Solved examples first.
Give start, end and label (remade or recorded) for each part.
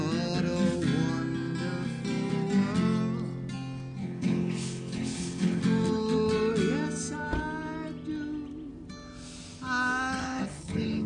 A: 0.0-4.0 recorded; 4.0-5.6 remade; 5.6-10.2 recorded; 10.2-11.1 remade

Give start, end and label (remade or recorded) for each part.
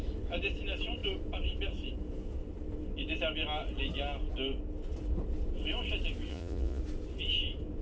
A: 0.0-6.3 recorded; 6.3-6.8 remade; 6.8-7.8 recorded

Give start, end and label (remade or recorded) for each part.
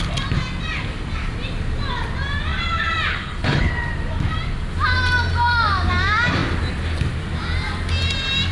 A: 0.0-3.1 recorded; 3.1-3.7 remade; 3.7-8.5 recorded